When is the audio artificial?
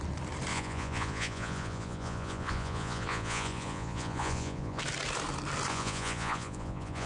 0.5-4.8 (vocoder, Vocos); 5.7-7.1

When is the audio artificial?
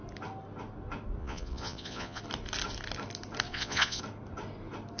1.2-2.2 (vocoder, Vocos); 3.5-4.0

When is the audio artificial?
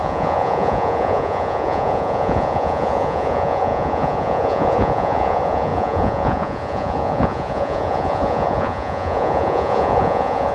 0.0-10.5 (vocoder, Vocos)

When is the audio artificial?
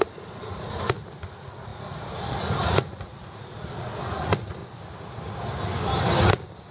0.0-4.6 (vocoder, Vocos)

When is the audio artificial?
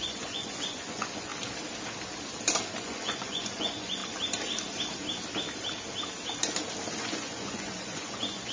0.0-1.3 (vocoder, Vocos); 2.8-4.0; 7.0-8.5